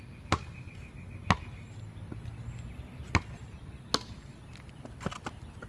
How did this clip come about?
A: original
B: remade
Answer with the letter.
A